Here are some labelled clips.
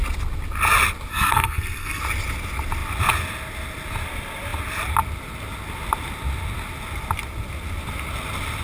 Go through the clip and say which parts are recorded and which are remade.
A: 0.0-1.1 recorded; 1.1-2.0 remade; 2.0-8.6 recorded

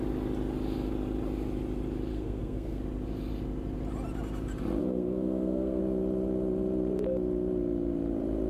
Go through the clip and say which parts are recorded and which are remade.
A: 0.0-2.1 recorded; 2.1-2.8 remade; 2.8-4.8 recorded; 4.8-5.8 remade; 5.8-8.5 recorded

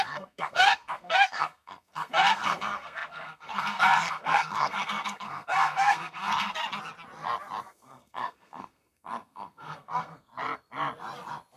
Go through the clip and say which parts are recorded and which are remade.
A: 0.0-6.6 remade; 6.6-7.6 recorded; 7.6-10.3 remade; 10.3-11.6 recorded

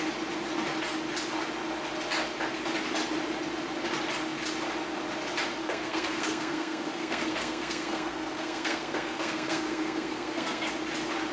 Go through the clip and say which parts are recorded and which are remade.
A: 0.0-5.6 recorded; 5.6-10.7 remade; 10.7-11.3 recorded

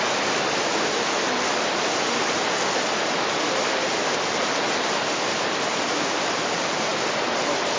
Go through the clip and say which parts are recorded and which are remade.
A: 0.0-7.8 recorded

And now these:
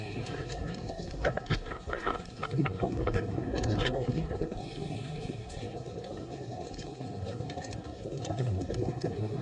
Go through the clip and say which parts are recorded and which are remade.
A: 0.0-9.4 remade

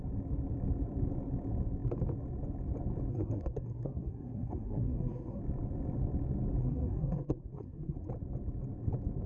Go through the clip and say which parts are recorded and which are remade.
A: 0.0-3.1 recorded; 3.1-5.4 remade; 5.4-6.6 recorded; 6.6-8.1 remade; 8.1-9.3 recorded

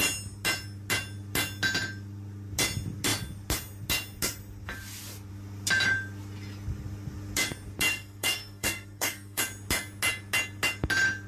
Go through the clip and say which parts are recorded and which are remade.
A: 0.0-7.9 recorded; 7.9-9.4 remade; 9.4-11.3 recorded